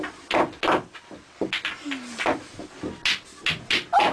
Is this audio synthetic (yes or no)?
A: no